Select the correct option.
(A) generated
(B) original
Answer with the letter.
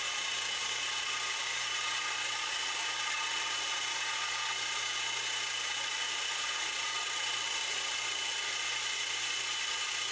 B